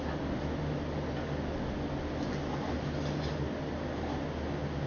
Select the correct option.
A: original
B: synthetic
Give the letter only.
A